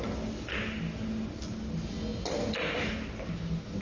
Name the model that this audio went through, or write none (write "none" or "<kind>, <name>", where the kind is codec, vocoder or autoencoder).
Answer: none